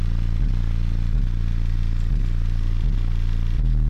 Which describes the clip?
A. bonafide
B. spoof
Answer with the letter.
A